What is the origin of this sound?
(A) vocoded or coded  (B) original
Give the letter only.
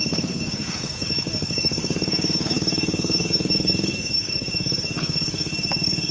A